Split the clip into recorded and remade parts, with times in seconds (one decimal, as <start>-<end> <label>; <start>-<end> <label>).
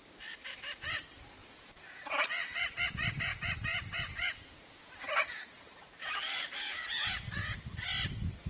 0.0-1.4 recorded; 1.4-2.5 remade; 2.5-3.3 recorded; 3.3-5.4 remade; 5.4-6.0 recorded; 6.0-7.6 remade; 7.6-8.5 recorded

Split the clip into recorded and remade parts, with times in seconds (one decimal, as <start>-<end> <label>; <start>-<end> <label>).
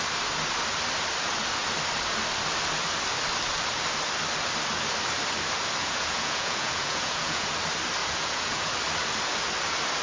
0.0-5.8 recorded; 5.8-7.5 remade; 7.5-8.0 recorded; 8.0-8.7 remade; 8.7-10.0 recorded